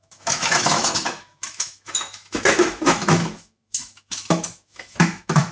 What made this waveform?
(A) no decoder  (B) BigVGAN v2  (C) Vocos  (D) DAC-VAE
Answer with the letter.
D